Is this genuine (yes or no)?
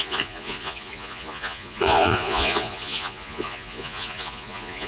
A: no